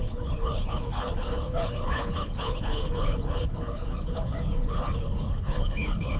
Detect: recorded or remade remade